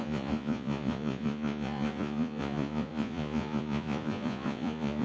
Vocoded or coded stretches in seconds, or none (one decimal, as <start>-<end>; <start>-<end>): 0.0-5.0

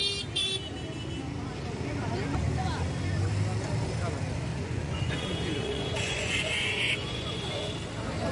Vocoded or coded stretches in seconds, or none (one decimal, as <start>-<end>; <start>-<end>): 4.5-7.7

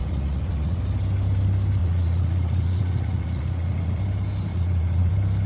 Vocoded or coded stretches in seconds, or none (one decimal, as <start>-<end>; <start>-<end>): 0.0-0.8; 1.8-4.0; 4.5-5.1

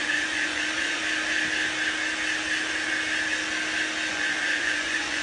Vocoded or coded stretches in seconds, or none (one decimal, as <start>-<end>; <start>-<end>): 0.0-1.0; 4.1-5.2